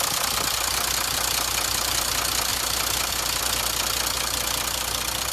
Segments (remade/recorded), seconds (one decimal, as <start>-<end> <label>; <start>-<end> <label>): 0.0-2.5 recorded; 2.5-3.1 remade; 3.1-5.3 recorded